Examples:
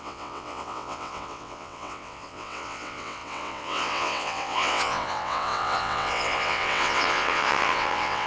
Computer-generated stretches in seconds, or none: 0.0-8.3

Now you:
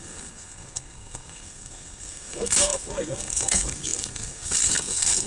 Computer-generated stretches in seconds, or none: 0.0-5.3